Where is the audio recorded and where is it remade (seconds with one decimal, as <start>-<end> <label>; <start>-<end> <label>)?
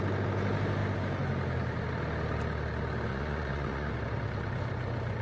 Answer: 0.0-3.1 recorded; 3.1-3.9 remade; 3.9-5.2 recorded